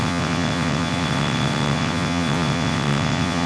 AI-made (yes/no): yes